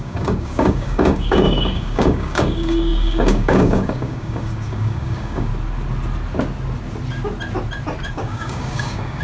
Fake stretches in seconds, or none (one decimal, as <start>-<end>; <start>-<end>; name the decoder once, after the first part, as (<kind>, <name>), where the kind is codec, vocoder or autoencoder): 0.0-5.5 (codec, DAC); 8.1-9.2